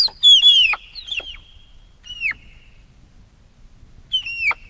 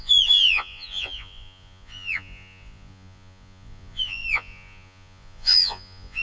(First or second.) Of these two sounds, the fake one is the second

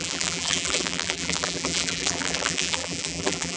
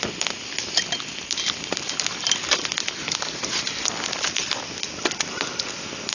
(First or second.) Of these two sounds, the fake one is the first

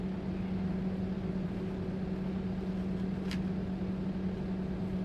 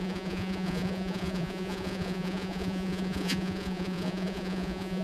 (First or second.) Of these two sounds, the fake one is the second